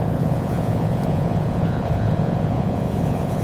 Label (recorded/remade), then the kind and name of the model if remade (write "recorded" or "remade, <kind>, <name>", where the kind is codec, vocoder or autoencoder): remade, vocoder, Vocos